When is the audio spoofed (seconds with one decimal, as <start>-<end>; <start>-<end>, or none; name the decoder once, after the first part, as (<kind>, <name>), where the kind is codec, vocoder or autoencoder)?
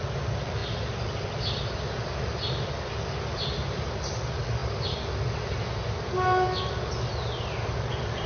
none